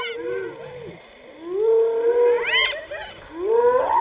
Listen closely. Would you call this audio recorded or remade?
recorded